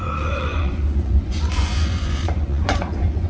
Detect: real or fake fake